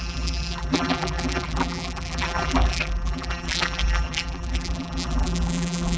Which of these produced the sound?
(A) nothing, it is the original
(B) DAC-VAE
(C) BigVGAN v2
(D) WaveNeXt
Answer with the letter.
C